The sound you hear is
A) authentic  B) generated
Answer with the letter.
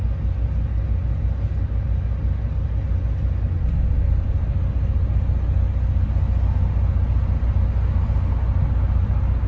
A